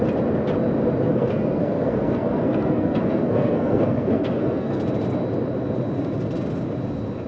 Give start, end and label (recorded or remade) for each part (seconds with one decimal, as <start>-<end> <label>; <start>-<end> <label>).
0.0-1.1 recorded; 1.1-4.8 remade; 4.8-7.3 recorded

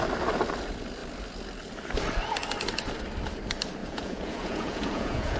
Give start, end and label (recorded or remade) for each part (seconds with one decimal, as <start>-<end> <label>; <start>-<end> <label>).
0.0-3.8 recorded; 3.8-5.4 remade